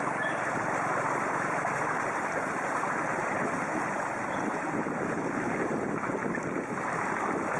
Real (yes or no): yes